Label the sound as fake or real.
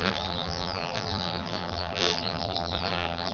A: fake